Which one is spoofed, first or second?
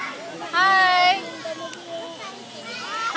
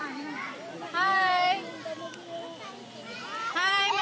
second